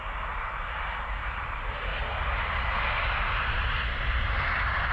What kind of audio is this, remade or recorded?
recorded